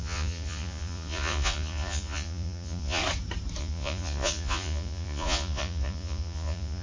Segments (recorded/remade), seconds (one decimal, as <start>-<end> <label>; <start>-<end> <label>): 0.0-3.0 remade; 3.0-3.6 recorded; 3.6-6.8 remade